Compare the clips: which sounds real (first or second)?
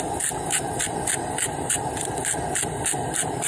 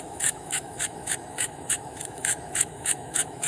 first